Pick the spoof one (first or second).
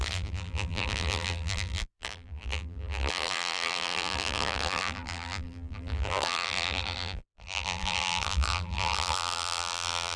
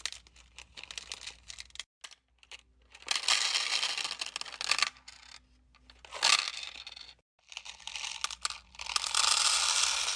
first